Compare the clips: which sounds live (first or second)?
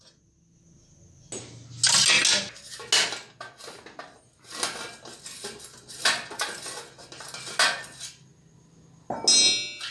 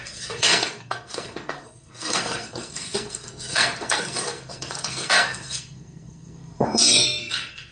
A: first